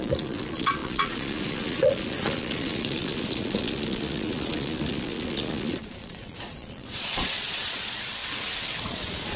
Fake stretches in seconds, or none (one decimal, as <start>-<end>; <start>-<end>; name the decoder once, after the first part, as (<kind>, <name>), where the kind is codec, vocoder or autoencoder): 0.0-8.2 (vocoder, Vocos); 8.8-9.4